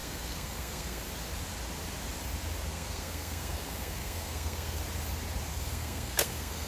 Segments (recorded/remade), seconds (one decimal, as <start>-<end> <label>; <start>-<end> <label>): 0.0-1.0 remade; 1.0-2.7 recorded; 2.7-4.8 remade; 4.8-5.5 recorded; 5.5-6.7 remade